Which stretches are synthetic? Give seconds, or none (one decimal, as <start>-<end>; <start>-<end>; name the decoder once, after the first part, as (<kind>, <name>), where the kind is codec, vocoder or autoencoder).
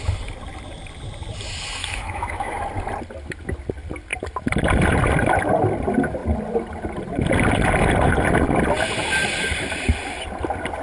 1.8-2.6 (autoencoder, DAC-VAE)